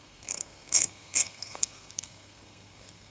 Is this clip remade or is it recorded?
remade